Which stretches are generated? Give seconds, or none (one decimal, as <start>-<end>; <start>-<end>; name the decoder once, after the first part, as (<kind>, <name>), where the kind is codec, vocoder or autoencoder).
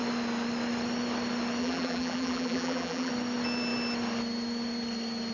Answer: 1.6-3.1 (vocoder, BigVGAN v2)